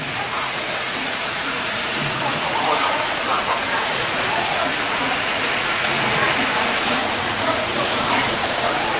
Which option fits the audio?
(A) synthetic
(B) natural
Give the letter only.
A